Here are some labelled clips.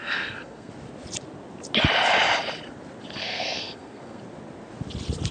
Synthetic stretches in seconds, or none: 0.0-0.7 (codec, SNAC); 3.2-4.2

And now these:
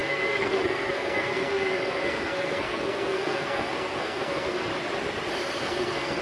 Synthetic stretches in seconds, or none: 0.0-4.7 (codec, SNAC); 5.6-6.2

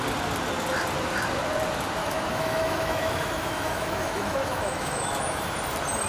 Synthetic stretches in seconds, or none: 2.0-5.5 (autoencoder, DAC-VAE)

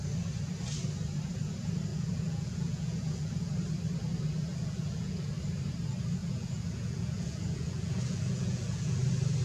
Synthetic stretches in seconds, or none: 1.9-3.5 (vocoder, Vocos); 4.5-5.3; 6.2-9.0

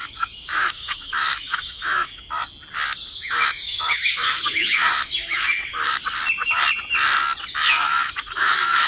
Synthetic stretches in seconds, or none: 0.0-2.4 (autoencoder, DAC-VAE); 3.1-6.0; 7.6-8.9

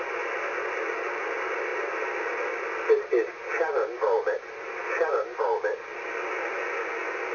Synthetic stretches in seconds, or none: none

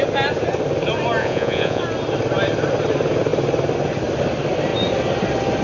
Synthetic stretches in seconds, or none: 1.2-1.8 (vocoder, Vocos)

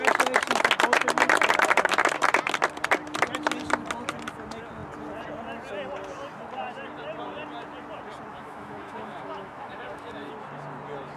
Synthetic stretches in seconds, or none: 8.3-10.3 (autoencoder, DAC-VAE)